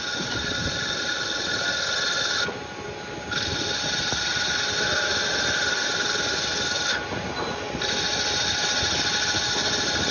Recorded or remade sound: recorded